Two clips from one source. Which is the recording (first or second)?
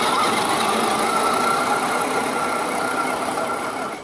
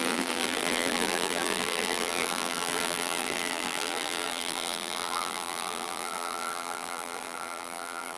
first